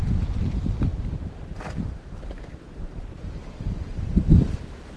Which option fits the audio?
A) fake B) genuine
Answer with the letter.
A